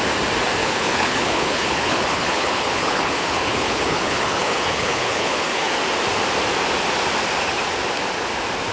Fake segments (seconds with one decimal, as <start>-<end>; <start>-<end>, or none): 0.6-5.8

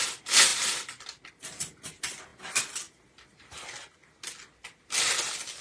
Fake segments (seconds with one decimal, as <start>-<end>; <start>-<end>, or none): none

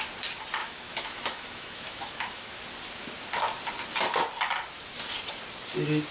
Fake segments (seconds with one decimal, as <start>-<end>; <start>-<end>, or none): 0.6-2.6

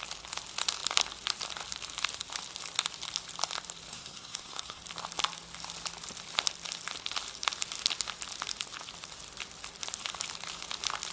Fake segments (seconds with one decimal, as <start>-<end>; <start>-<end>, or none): 3.9-4.8

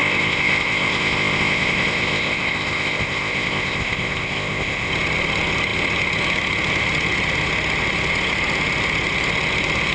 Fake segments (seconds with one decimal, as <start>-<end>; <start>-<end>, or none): 0.0-4.9

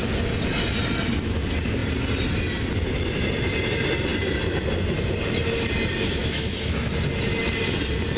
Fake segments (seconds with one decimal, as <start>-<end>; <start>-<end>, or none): 6.2-6.9

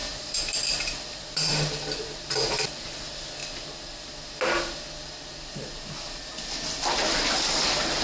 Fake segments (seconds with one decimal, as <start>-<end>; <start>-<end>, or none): 0.0-2.0